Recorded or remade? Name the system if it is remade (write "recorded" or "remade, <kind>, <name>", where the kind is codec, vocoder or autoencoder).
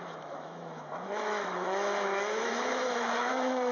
remade, autoencoder, DAC-VAE